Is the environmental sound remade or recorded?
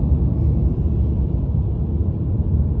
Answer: recorded